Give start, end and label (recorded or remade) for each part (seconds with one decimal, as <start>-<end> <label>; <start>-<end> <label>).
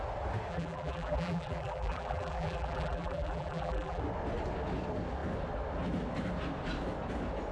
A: 0.0-0.5 recorded; 0.5-4.0 remade; 4.0-7.5 recorded